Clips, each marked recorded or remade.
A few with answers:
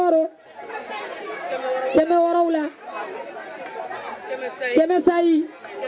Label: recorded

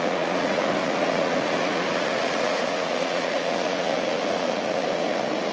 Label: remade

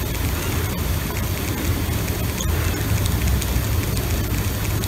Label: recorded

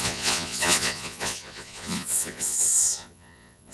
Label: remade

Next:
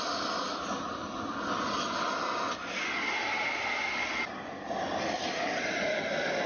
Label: recorded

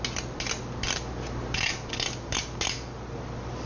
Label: recorded